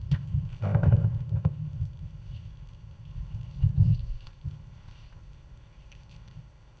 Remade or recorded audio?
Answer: remade